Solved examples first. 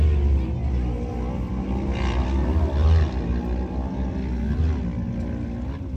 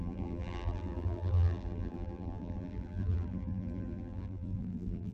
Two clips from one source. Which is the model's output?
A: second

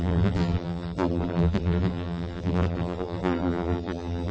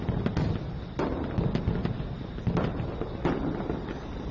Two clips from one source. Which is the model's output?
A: first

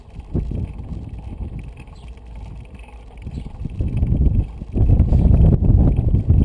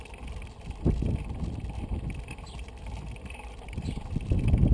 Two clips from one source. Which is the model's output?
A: second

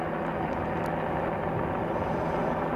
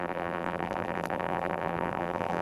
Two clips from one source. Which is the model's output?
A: second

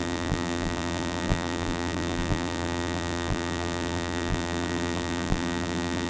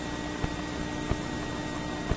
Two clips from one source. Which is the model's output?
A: first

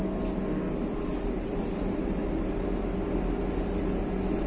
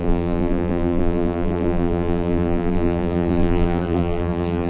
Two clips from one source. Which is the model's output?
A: second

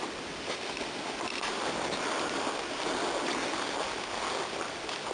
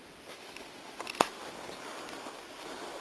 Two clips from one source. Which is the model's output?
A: second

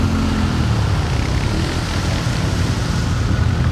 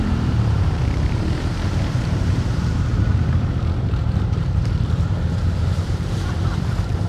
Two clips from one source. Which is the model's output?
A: second